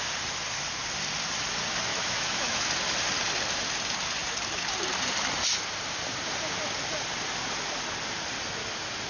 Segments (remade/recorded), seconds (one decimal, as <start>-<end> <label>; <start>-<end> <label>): 0.0-1.9 recorded; 1.9-2.7 remade; 2.7-9.1 recorded